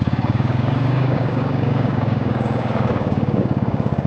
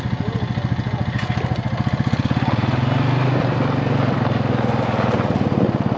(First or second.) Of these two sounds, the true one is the second